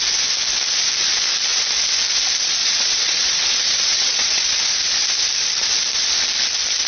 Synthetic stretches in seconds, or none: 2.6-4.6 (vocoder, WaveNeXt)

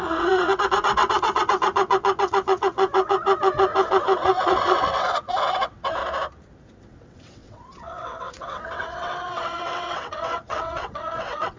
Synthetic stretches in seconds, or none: 0.0-6.0 (vocoder, WaveNeXt); 6.8-11.6

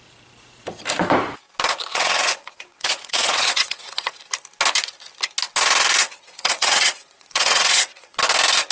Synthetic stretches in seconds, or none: 1.9-4.1 (vocoder, WaveNeXt); 6.0-8.2

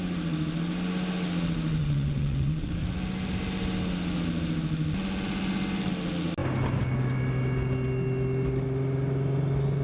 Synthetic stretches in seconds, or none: 1.8-2.7 (vocoder, WaveNeXt)

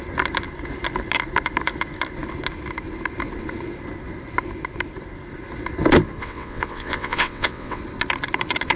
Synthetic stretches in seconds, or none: 6.2-7.8 (vocoder, WaveNeXt)

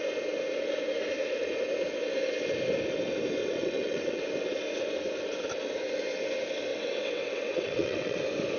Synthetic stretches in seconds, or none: 3.4-4.2 (vocoder, WaveNeXt); 6.7-8.2